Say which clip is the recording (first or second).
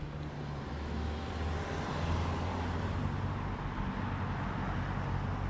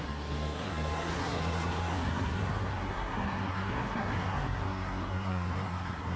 first